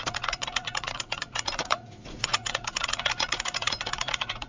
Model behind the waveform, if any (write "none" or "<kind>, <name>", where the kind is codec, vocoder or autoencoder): vocoder, Vocos